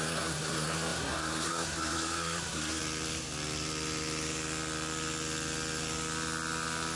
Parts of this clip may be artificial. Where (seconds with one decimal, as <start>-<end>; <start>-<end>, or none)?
0.0-2.8